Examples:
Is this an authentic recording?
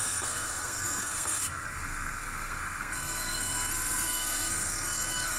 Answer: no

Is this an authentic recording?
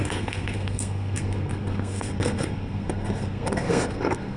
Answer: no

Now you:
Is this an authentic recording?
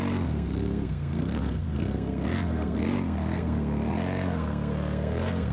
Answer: no